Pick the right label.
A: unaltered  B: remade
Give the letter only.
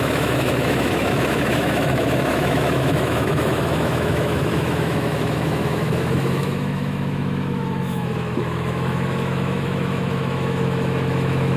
B